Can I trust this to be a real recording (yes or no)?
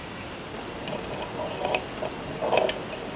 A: yes